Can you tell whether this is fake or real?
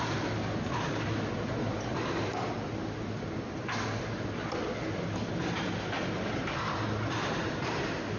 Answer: real